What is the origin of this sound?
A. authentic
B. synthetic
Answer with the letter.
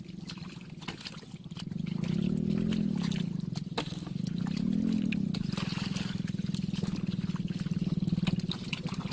A